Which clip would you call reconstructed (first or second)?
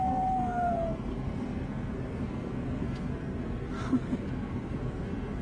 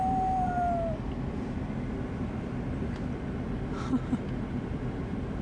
first